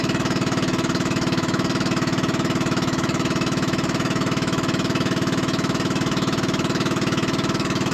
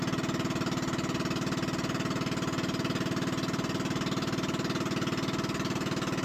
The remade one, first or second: first